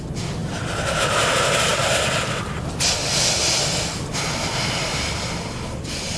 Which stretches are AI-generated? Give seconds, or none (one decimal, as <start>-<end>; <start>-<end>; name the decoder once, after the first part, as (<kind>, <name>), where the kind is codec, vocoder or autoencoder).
none